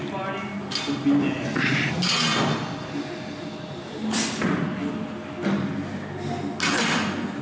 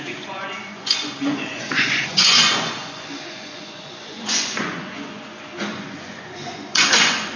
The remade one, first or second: second